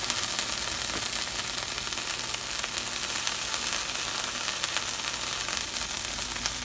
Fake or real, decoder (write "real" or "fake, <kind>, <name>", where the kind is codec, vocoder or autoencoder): real